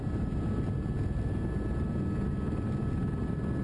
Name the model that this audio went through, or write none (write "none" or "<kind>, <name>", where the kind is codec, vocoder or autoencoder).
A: none